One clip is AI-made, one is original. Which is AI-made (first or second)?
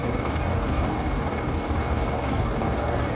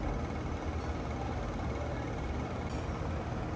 first